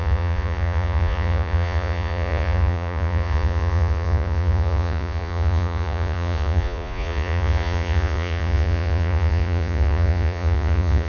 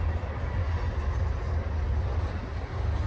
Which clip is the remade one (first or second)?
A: first